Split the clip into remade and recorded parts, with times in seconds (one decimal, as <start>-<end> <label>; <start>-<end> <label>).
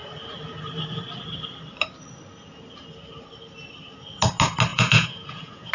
0.0-4.7 recorded; 4.7-5.7 remade